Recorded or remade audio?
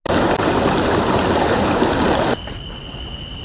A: recorded